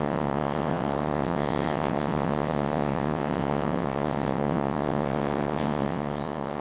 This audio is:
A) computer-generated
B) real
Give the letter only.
A